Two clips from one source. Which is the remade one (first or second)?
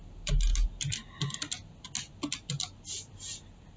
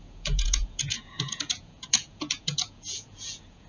second